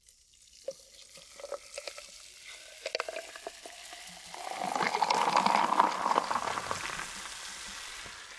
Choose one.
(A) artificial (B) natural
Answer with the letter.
B